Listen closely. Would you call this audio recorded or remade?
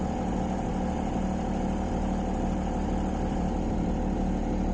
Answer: remade